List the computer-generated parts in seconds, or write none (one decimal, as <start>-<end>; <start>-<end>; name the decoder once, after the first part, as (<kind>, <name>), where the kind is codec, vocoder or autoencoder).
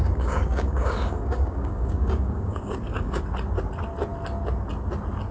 0.0-3.2 (codec, DAC)